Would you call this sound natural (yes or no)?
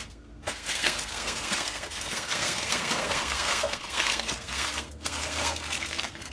no